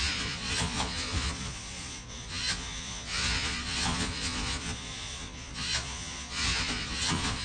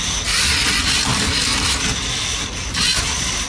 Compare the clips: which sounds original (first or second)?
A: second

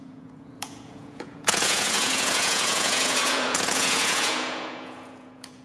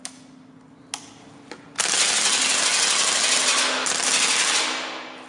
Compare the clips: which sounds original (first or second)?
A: second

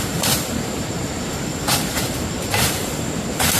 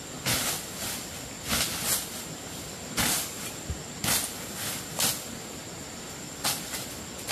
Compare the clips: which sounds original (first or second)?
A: second